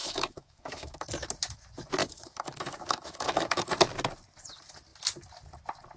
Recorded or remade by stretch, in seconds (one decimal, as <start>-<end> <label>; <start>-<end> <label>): 0.0-1.1 remade; 1.1-2.0 recorded; 2.0-3.7 remade; 3.7-6.0 recorded